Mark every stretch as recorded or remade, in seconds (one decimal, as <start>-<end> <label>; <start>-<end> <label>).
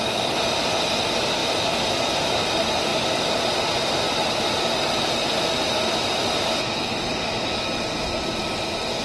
0.0-9.0 recorded